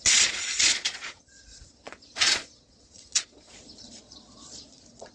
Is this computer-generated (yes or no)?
yes